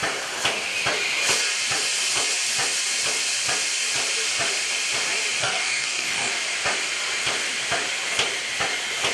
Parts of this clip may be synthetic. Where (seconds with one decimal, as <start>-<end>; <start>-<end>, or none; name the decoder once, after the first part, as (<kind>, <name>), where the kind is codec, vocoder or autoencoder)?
5.4-6.3 (codec, DAC)